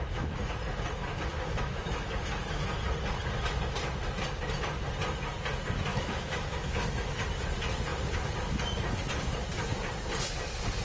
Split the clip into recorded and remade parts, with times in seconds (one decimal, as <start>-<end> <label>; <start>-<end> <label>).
0.0-1.1 recorded; 1.1-2.7 remade; 2.7-5.9 recorded; 5.9-7.1 remade; 7.1-10.8 recorded